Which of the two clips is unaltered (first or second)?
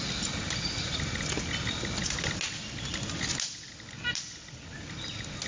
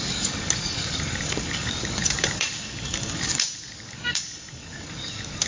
first